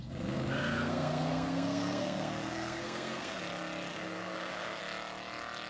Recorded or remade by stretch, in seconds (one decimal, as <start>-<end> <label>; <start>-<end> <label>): 0.0-3.4 remade; 3.4-3.9 recorded; 3.9-4.8 remade; 4.8-5.7 recorded